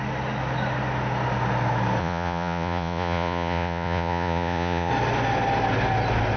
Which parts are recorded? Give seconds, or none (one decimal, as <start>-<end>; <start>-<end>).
0.0-2.0; 4.9-6.4